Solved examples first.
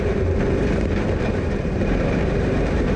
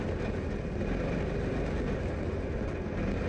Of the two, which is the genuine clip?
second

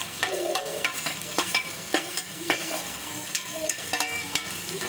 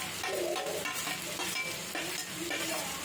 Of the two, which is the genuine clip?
second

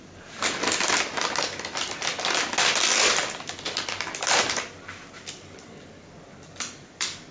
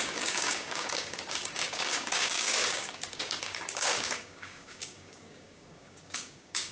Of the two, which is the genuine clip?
first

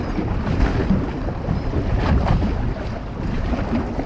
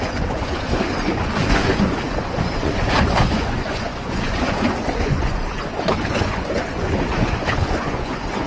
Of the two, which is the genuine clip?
first